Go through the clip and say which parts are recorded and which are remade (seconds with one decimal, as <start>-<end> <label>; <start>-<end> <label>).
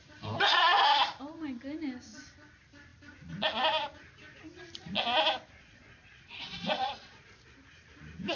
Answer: 0.0-5.6 recorded; 5.6-7.2 remade; 7.2-8.4 recorded